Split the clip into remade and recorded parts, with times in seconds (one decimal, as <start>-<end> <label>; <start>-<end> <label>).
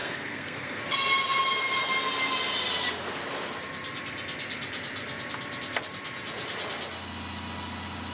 0.0-0.8 remade; 0.8-8.1 recorded